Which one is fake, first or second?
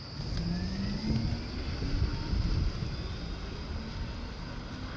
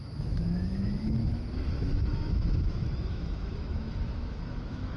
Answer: second